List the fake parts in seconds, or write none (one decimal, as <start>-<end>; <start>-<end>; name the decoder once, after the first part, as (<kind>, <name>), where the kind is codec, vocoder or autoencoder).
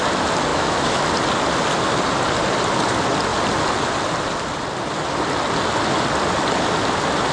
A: 0.5-1.1 (autoencoder, DAC-VAE)